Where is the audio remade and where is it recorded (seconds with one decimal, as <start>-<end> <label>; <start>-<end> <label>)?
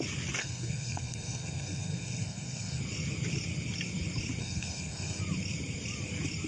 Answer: 0.0-0.4 recorded; 0.4-2.8 remade; 2.8-4.4 recorded; 4.4-5.2 remade; 5.2-6.5 recorded